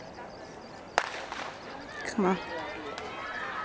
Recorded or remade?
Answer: recorded